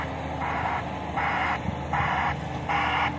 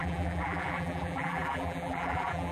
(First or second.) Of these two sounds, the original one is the first